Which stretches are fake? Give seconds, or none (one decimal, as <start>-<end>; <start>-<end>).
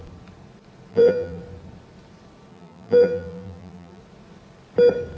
0.9-1.4; 2.5-4.0